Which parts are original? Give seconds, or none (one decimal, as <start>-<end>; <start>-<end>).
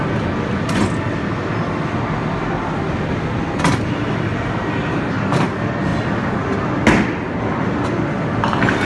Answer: 0.0-8.8